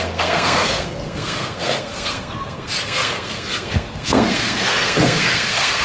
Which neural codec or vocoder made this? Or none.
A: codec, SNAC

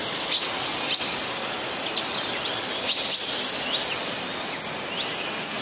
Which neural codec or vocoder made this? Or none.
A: none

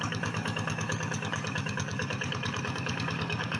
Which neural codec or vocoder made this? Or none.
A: codec, DAC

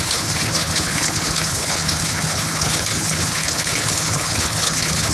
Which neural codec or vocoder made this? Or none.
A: codec, HILCodec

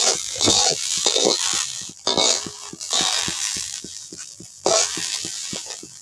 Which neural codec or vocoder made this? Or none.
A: vocoder, BigVGAN v2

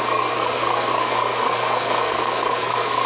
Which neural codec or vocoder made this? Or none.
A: codec, SNAC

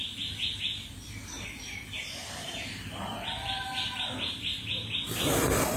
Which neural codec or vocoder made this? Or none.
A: vocoder, BigVGAN v2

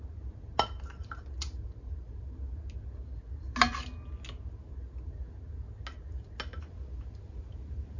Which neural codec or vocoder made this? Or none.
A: none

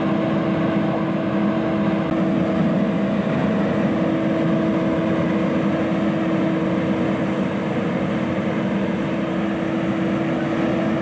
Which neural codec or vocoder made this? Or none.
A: none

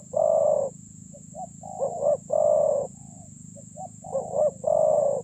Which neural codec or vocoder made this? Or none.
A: vocoder, Vocos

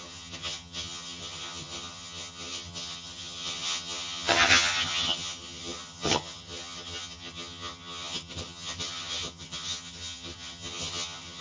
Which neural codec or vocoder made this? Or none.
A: vocoder, HiFi-GAN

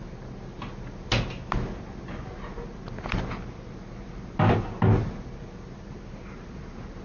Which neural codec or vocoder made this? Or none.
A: none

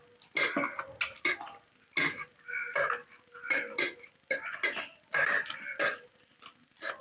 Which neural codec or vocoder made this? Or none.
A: none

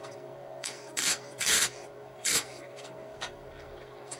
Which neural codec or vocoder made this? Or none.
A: codec, SNAC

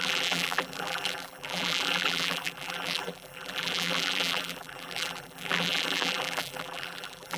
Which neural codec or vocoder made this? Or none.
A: vocoder, BigVGAN v2